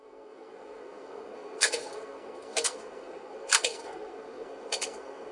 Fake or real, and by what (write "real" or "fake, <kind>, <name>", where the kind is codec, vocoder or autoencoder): fake, codec, SNAC